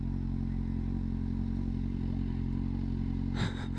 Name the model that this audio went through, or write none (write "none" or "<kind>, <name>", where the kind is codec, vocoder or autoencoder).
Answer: none